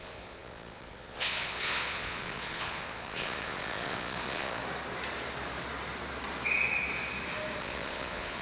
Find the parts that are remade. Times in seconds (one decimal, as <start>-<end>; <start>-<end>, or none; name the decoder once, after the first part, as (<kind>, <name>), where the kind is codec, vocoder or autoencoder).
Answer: 0.0-4.6 (vocoder, Vocos); 7.6-8.4